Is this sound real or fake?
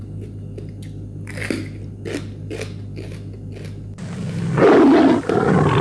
real